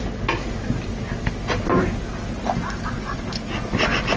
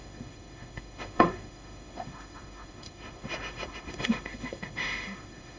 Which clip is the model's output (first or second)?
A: second